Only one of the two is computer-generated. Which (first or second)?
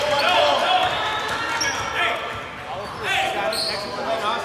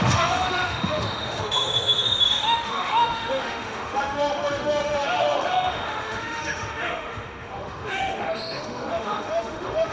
second